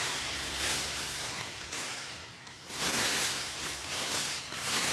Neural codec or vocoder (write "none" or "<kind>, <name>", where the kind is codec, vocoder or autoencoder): codec, SNAC